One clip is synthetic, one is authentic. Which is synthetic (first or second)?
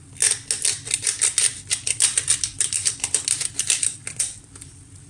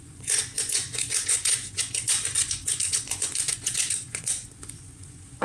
second